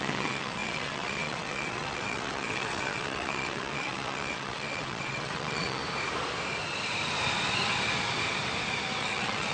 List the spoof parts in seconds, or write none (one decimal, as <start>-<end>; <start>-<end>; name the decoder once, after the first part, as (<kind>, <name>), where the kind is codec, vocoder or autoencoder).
0.0-5.8 (vocoder, WaveNeXt); 9.0-9.5